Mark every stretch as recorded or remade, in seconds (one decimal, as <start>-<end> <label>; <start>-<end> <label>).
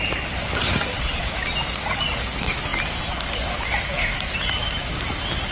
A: 0.0-5.5 recorded